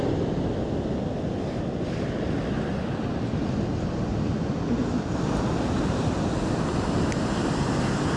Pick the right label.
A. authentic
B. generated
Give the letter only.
A